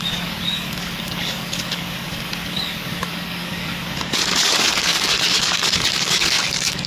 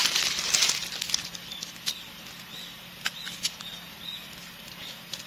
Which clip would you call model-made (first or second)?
first